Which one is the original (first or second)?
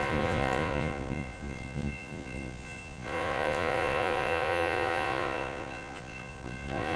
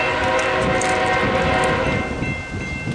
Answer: second